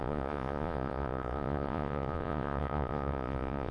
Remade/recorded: remade